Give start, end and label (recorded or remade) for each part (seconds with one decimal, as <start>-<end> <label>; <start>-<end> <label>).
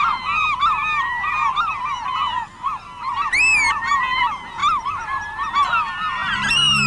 0.0-4.6 recorded; 4.6-5.5 remade; 5.5-6.2 recorded; 6.2-6.9 remade